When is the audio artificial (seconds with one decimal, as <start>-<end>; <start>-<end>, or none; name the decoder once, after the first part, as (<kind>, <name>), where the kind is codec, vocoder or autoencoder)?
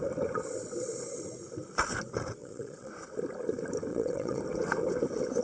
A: 2.4-2.9 (vocoder, WaveNeXt); 3.9-4.4